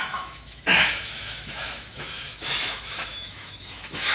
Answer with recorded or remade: remade